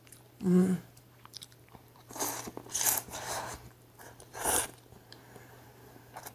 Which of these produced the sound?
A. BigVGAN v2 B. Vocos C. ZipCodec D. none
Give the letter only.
A